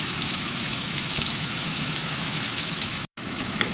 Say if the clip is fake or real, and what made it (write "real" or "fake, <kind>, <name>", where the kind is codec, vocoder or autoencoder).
fake, autoencoder, DAC-VAE